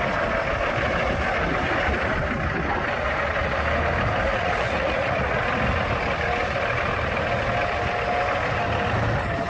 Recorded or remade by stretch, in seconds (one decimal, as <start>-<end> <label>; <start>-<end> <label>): 0.0-4.3 recorded; 4.3-5.4 remade; 5.4-9.5 recorded